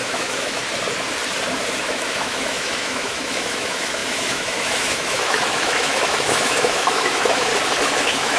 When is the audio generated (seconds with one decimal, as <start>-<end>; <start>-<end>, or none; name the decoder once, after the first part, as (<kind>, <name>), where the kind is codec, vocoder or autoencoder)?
0.0-0.6 (autoencoder, DAC-VAE); 1.8-7.5; 8.0-8.4